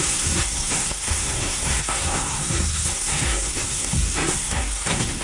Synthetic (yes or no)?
yes